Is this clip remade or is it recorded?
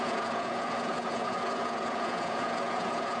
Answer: remade